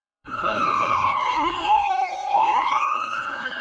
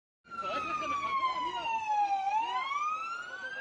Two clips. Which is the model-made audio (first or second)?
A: first